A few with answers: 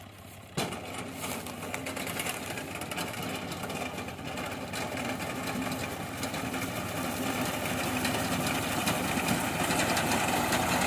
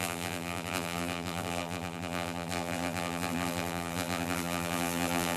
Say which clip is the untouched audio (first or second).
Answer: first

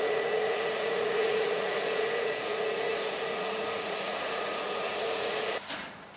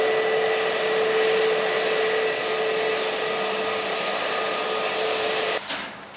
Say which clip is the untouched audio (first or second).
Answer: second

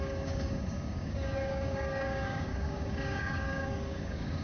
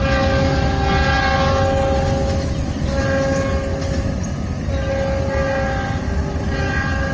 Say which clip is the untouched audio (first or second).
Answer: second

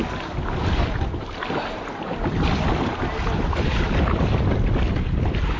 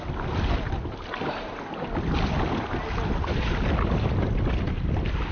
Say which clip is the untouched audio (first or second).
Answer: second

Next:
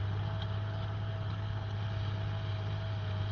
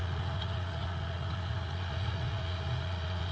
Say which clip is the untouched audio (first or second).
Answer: first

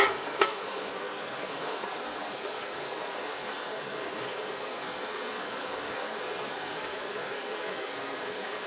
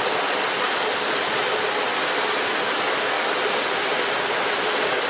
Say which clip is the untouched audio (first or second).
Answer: second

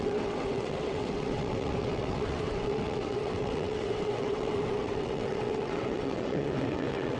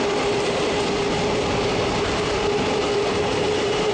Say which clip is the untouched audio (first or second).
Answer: second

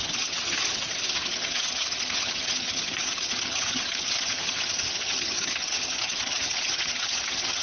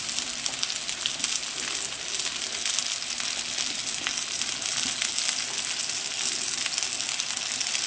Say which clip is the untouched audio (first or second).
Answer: second